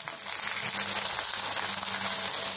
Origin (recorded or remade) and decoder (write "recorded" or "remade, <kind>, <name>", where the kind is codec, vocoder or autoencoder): recorded